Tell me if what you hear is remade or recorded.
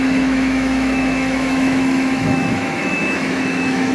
remade